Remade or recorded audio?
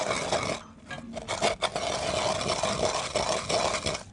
recorded